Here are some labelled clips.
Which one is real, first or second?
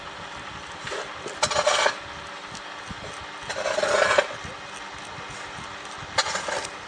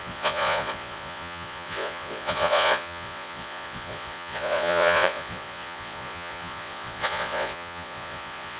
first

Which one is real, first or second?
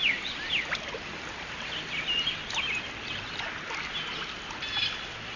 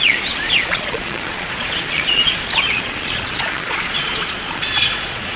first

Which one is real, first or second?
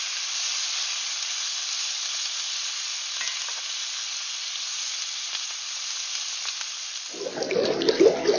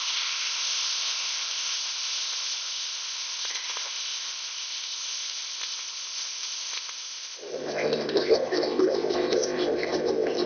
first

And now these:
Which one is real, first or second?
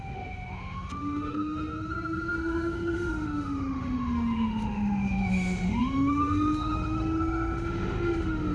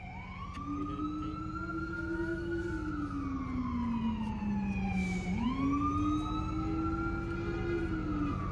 second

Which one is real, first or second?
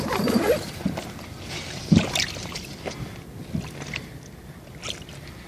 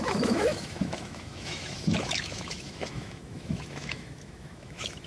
first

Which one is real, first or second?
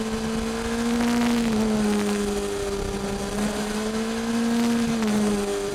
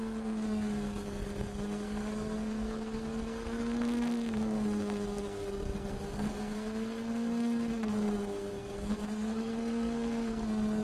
first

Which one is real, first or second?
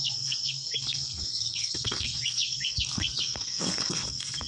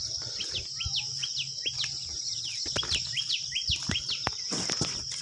second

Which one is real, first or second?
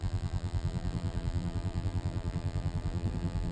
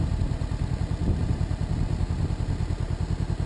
second